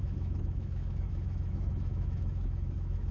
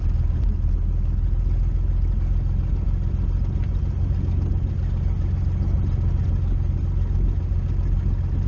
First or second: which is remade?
first